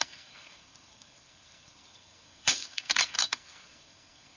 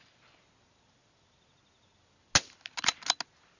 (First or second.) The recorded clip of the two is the second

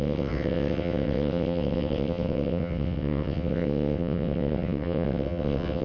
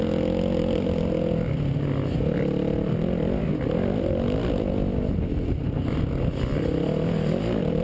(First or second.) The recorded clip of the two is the second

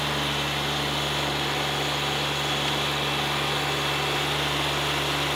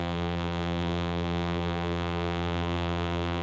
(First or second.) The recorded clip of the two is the first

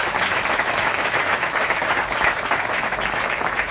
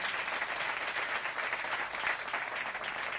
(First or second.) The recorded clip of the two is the second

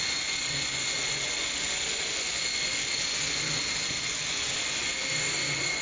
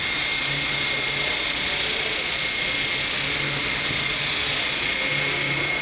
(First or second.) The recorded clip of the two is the second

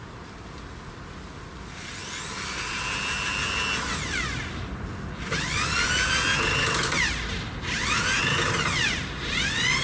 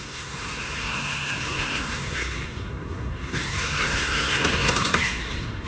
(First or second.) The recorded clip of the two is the first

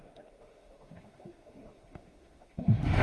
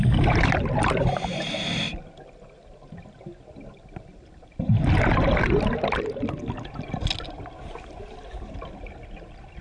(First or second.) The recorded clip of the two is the second